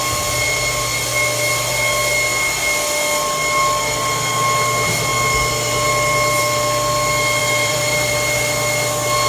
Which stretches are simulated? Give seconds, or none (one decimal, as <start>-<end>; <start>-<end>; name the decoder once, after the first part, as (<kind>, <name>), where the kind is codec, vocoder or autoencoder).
7.4-8.1 (vocoder, BigVGAN v2)